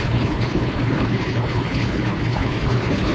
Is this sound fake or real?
fake